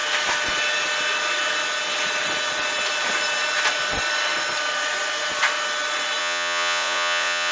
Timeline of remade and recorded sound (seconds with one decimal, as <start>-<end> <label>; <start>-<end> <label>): 0.0-6.2 recorded; 6.2-7.5 remade